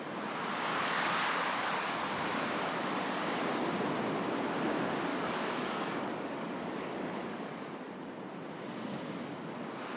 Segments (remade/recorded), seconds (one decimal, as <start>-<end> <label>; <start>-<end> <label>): 0.0-0.7 recorded; 0.7-2.0 remade; 2.0-5.1 recorded; 5.1-8.1 remade; 8.1-10.0 recorded